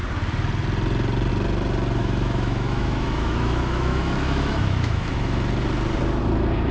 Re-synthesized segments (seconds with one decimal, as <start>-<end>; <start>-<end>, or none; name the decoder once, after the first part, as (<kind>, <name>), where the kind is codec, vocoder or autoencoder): 2.0-5.4 (autoencoder, DAC-VAE)